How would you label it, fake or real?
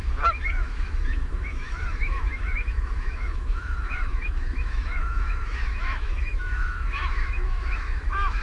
fake